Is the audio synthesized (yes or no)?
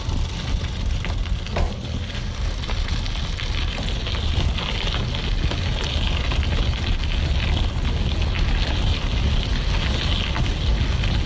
no